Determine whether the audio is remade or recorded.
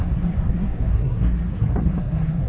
remade